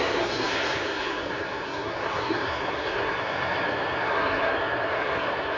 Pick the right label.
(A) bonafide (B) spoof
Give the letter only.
B